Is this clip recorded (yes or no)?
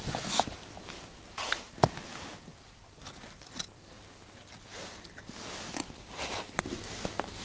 yes